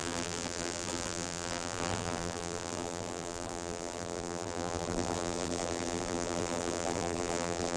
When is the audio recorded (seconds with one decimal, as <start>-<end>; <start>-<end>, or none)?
none